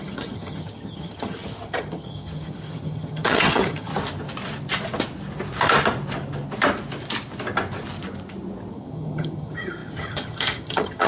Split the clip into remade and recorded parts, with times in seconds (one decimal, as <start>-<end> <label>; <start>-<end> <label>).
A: 0.0-3.9 remade; 3.9-8.7 recorded; 8.7-11.1 remade